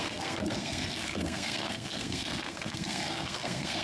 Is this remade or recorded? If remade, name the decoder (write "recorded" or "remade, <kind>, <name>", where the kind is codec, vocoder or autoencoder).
remade, codec, SNAC